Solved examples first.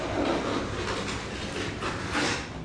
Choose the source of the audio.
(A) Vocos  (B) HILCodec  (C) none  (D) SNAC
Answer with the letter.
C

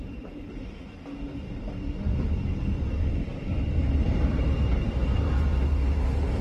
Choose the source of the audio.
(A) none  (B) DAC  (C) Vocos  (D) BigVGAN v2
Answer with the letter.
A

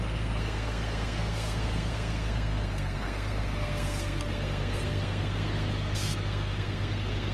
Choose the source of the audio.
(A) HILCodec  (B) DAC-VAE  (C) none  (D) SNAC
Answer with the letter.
D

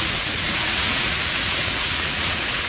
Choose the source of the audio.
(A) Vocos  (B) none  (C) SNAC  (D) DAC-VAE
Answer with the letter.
A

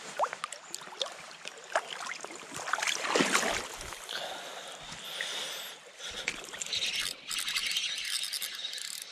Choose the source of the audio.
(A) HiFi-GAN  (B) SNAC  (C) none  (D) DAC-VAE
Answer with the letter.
C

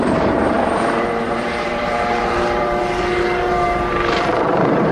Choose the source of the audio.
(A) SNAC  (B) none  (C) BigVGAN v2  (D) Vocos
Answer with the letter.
C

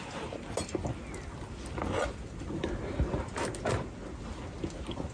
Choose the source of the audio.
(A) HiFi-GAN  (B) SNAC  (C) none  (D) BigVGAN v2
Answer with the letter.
C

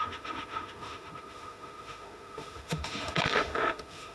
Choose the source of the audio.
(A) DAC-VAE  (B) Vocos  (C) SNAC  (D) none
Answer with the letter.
A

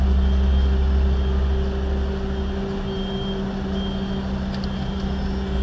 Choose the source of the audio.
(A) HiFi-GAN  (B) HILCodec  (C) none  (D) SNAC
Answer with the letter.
C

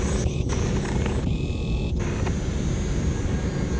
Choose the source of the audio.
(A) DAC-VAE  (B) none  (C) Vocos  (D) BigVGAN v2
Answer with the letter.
B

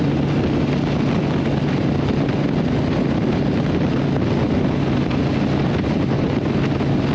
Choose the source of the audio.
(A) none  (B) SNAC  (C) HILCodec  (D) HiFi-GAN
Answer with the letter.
A